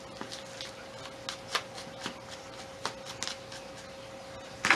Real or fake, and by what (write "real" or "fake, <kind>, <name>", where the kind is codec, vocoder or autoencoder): real